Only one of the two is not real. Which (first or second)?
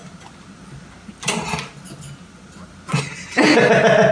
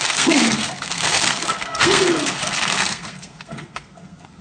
second